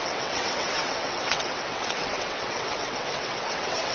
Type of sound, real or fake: fake